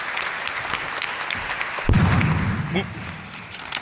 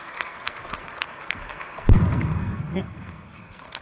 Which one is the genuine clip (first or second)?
first